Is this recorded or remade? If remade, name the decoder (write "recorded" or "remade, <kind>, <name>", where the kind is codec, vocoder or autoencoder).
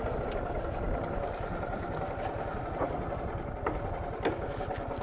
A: recorded